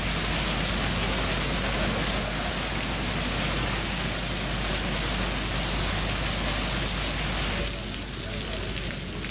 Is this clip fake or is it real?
real